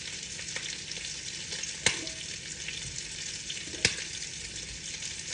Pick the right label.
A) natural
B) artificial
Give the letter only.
A